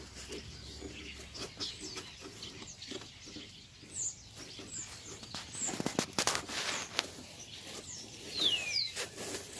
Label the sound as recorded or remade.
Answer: recorded